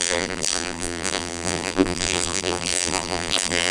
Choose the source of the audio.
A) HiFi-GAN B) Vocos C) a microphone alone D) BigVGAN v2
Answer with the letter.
D